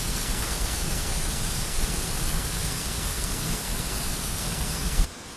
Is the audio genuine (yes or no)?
no